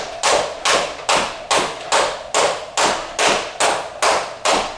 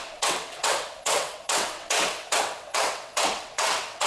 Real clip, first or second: first